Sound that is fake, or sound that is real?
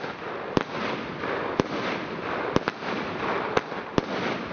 real